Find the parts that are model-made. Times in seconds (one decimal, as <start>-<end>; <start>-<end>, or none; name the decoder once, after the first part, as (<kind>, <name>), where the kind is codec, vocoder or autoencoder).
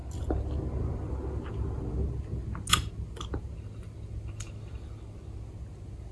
none